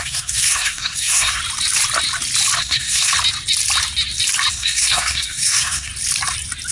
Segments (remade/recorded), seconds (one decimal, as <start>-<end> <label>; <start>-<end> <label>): 0.0-1.4 remade; 1.4-2.6 recorded; 2.6-3.1 remade; 3.1-4.5 recorded; 4.5-5.9 remade; 5.9-6.7 recorded